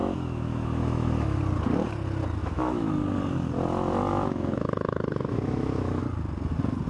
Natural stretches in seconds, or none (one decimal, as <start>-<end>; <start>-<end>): 1.4-2.4; 2.9-4.1; 6.0-6.9

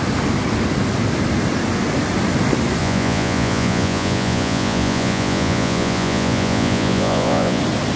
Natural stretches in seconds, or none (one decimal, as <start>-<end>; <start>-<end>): 0.0-2.8; 7.6-8.0

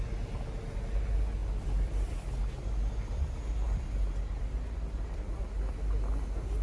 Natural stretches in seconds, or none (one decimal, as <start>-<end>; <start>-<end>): 0.0-6.6

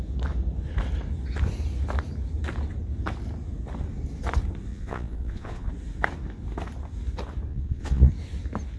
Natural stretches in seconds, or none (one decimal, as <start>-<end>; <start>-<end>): 0.0-4.7; 5.7-7.5; 8.1-8.8

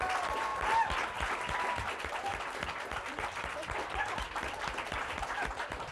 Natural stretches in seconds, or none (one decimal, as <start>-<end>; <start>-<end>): 0.5-1.9

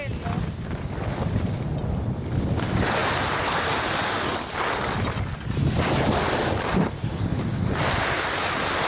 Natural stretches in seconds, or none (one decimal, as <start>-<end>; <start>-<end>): 0.0-3.0; 3.8-8.9

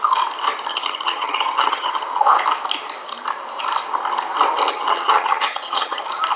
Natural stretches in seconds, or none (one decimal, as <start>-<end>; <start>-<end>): 0.0-0.7; 2.0-4.7; 6.0-6.4

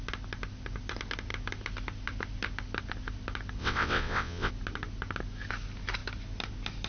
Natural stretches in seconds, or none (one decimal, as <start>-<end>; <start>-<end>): 0.0-3.6; 4.5-6.9